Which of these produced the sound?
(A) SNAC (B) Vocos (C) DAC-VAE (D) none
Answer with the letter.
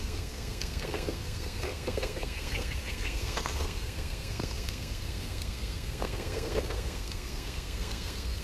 A